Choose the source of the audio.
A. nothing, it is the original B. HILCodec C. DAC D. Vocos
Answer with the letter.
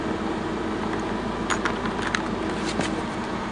A